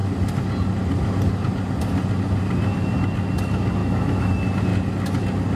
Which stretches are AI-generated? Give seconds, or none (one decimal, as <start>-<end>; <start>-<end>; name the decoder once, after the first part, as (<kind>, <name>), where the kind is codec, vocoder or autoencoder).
3.8-4.3 (autoencoder, DAC-VAE)